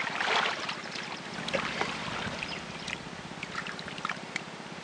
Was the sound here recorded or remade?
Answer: recorded